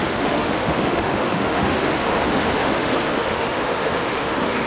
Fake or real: fake